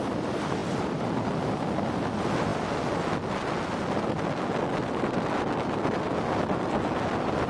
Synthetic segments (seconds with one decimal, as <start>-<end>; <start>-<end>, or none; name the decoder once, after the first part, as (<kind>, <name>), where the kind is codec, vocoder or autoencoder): none